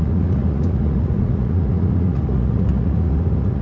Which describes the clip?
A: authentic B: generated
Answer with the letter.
B